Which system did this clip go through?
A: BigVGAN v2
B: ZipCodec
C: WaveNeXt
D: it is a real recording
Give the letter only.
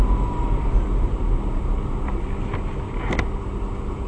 D